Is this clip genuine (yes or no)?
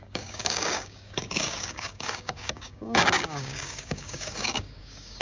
no